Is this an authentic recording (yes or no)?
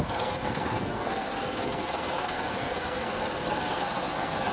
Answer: no